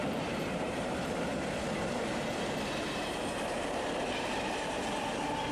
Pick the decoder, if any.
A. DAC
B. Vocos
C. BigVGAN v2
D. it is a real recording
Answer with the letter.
C